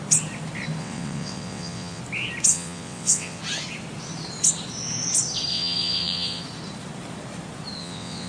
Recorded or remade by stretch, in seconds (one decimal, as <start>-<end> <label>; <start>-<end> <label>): 0.0-0.8 recorded; 0.8-2.0 remade; 2.0-2.5 recorded; 2.5-3.4 remade; 3.4-5.5 recorded; 5.5-6.4 remade; 6.4-7.8 recorded; 7.8-8.3 remade